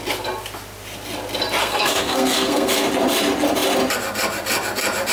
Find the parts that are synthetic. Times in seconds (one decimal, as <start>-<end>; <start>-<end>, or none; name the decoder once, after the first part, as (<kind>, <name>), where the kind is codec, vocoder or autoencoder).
1.6-2.9 (codec, SNAC)